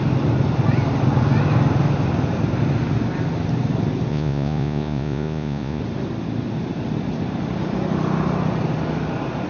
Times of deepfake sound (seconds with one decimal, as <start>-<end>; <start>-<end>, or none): 4.1-5.8